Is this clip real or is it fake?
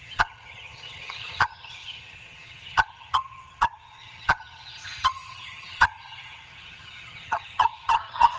fake